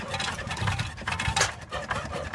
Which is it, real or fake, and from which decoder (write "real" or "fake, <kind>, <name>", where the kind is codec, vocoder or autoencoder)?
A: real